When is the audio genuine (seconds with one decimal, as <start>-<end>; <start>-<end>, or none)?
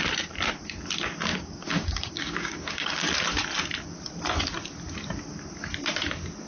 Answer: 0.0-1.3; 3.1-6.5